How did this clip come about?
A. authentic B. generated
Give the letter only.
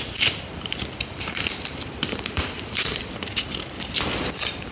B